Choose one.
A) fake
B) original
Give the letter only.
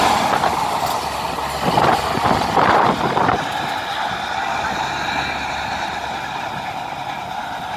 B